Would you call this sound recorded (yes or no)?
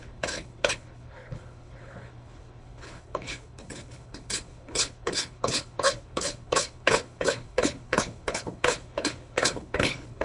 no